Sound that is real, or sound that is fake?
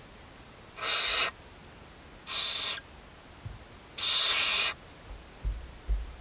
real